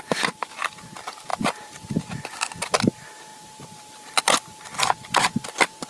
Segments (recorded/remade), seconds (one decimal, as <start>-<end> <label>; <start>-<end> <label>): 0.0-1.3 recorded; 1.3-2.0 remade; 2.0-3.3 recorded; 3.3-4.6 remade; 4.6-5.9 recorded